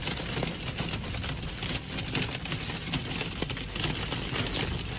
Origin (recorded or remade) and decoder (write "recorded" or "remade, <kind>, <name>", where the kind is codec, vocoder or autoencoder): recorded